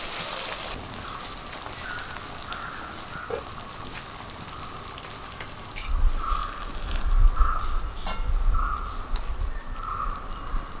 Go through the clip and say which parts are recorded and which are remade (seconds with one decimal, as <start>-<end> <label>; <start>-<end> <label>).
0.0-10.8 recorded